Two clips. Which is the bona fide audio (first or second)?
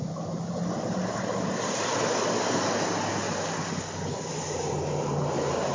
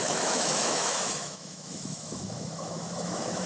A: first